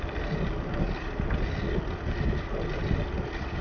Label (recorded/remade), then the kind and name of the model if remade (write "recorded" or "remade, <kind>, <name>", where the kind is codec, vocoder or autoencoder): recorded